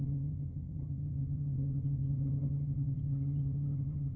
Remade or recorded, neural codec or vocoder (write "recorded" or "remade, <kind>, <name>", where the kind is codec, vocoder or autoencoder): remade, vocoder, HiFi-GAN